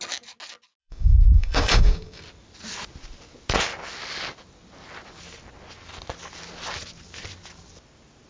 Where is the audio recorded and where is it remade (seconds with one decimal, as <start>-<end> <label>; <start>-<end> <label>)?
0.0-0.8 recorded; 0.8-2.2 remade; 2.2-8.3 recorded